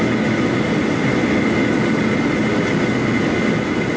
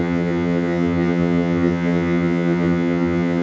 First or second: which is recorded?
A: first